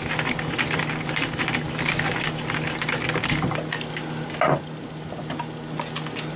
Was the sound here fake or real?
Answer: real